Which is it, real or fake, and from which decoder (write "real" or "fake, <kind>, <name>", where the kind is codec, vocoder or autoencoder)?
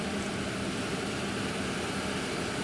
real